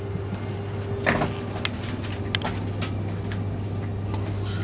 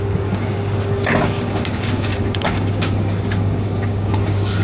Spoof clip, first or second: second